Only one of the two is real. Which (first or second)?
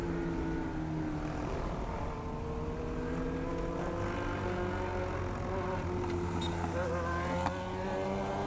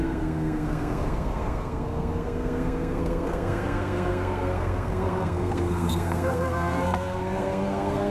first